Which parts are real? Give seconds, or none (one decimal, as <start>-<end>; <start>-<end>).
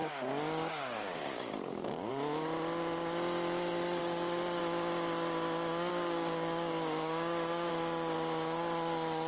2.1-4.0; 4.6-5.9; 7.7-9.3